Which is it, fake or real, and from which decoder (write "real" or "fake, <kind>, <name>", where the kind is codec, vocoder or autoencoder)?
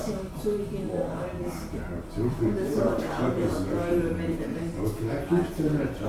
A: real